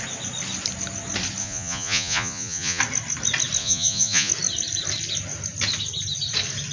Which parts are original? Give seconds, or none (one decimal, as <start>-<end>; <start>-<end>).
0.0-1.4; 2.8-3.6; 4.3-6.7